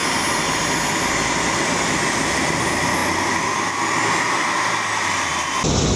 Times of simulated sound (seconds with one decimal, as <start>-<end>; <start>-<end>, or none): none